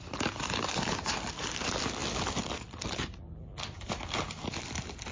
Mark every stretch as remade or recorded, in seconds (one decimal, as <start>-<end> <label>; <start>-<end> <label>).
0.0-5.1 recorded